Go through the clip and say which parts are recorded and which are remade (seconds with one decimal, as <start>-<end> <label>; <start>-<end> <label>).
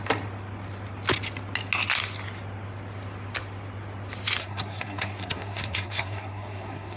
0.0-4.4 recorded; 4.4-7.0 remade